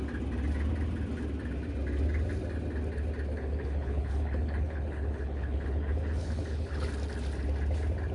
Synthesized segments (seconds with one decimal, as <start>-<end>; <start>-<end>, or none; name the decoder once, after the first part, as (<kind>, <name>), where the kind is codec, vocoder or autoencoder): 3.3-6.9 (codec, HILCodec)